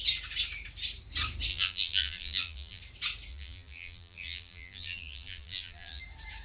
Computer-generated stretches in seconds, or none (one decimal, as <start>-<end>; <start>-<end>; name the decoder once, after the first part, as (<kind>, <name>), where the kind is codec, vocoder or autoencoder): 1.5-2.8 (vocoder, BigVGAN v2); 3.3-6.0